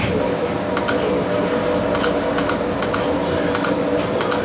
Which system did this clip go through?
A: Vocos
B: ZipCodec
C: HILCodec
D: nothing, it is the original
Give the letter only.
D